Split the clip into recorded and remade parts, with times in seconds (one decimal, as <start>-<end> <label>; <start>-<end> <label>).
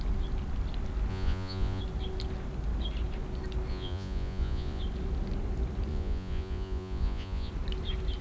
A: 0.0-1.1 recorded; 1.1-1.8 remade; 1.8-3.7 recorded; 3.7-4.8 remade; 4.8-5.9 recorded; 5.9-7.5 remade; 7.5-8.2 recorded